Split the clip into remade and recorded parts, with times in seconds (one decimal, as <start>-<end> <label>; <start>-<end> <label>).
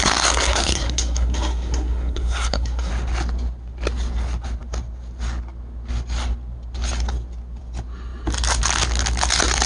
0.0-2.9 remade; 2.9-9.7 recorded